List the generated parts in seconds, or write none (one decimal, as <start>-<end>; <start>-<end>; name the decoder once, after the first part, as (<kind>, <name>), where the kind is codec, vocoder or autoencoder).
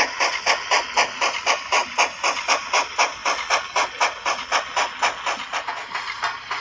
0.0-1.8 (vocoder, BigVGAN v2); 2.6-3.2; 5.9-6.6